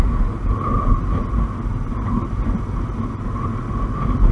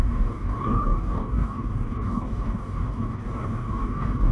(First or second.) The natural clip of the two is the first